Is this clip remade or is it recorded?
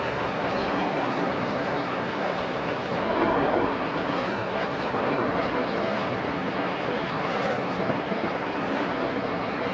remade